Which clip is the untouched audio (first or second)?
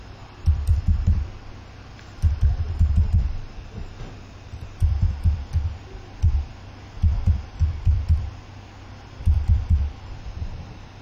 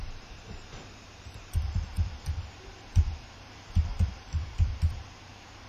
first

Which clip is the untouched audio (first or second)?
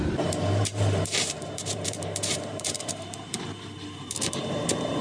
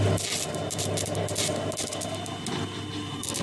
second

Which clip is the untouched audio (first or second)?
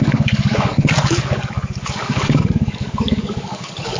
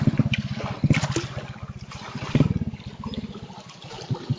second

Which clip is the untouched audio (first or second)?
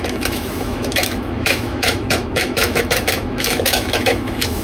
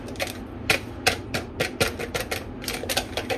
second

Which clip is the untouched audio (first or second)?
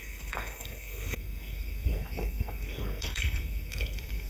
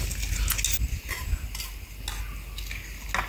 second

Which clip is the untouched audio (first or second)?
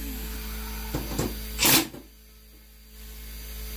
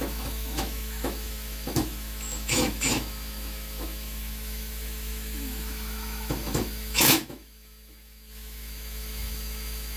first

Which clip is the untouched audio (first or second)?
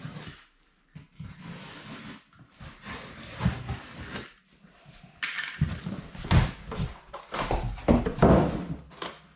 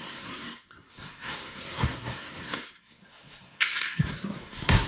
first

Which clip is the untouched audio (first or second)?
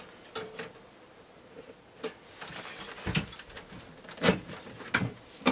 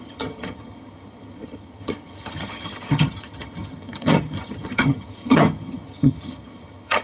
first